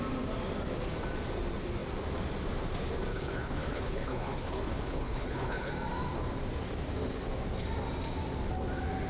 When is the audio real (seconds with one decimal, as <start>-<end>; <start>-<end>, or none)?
0.0-3.1; 5.7-9.1